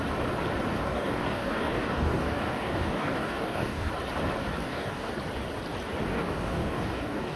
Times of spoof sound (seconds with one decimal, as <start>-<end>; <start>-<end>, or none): 0.8-3.9; 4.6-5.1; 6.2-7.4

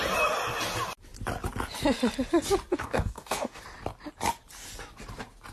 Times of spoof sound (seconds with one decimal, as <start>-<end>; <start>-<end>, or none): 2.7-3.6

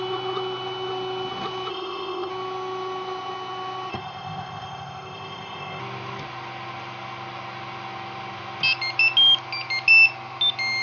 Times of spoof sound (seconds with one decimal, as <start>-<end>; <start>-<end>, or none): 1.7-2.3; 3.9-5.8

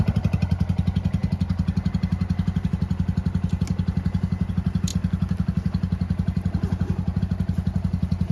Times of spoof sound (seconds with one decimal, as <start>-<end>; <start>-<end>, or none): none

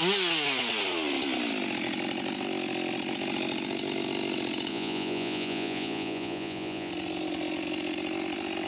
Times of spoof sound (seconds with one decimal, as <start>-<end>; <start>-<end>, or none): 4.7-6.9

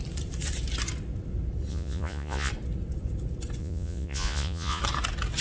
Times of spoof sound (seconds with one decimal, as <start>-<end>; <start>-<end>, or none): 1.7-2.5; 3.6-4.8

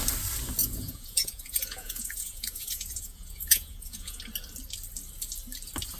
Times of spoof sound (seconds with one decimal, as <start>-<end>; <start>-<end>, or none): 0.6-4.2